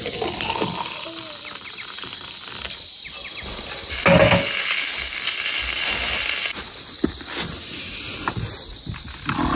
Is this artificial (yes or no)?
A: no